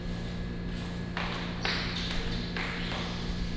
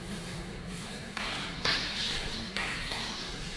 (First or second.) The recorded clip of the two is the first